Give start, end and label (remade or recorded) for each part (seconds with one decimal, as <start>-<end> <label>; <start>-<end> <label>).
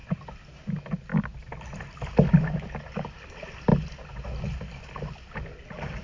0.0-6.0 recorded